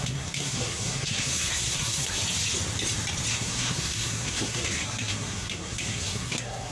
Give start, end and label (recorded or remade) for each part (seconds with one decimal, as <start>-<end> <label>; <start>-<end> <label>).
0.0-2.2 remade; 2.2-3.3 recorded; 3.3-6.7 remade